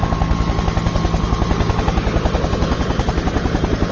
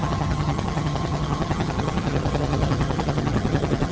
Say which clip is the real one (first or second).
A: first